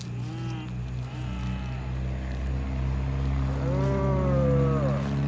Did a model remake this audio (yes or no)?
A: no